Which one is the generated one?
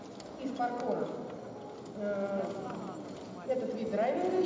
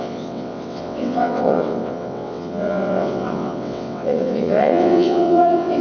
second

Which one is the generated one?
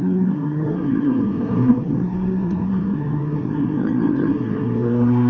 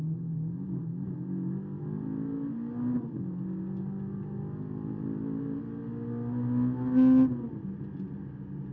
first